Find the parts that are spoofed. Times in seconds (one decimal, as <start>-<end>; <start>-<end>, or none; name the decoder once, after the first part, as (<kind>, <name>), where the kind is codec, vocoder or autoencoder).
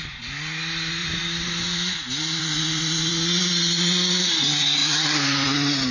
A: 1.0-2.4 (vocoder, BigVGAN v2); 4.8-5.9